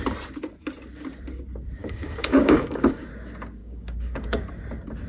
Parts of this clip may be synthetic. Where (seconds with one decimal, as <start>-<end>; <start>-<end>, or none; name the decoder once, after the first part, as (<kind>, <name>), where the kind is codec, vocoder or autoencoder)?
1.8-3.1 (codec, DAC); 3.6-4.4